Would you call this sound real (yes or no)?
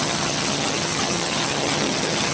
no